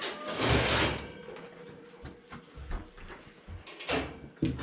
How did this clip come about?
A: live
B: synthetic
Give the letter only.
A